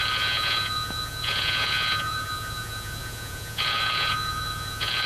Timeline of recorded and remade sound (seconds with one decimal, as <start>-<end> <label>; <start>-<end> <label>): 0.0-5.1 remade